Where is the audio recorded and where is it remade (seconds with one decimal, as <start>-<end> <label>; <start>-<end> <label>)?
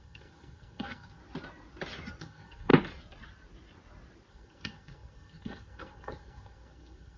0.0-1.2 remade; 1.2-2.2 recorded; 2.2-2.7 remade; 2.7-4.3 recorded; 4.3-7.2 remade